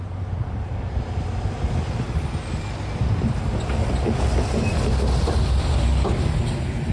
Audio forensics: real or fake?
real